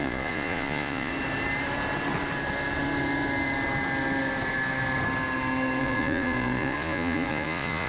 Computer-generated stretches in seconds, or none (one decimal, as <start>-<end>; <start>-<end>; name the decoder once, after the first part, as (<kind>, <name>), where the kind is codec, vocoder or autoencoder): 0.0-1.1 (vocoder, Vocos); 5.8-7.9